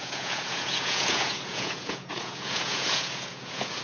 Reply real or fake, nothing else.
fake